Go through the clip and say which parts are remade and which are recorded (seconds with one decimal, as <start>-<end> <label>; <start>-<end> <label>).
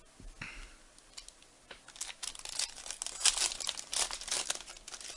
0.0-5.2 recorded